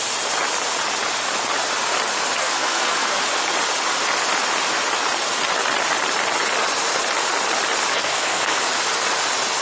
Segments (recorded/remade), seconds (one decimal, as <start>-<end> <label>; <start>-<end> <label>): 0.0-2.4 recorded; 2.4-3.2 remade; 3.2-7.9 recorded; 7.9-8.6 remade; 8.6-9.6 recorded